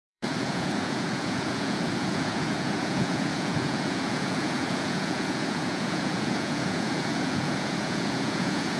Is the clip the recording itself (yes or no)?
no